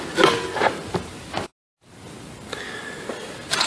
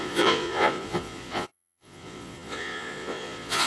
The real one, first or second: first